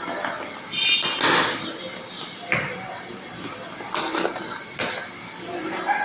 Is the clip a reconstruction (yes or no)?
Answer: no